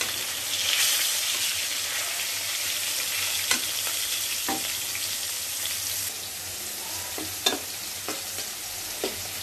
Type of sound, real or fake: real